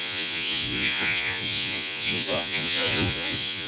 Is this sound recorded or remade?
remade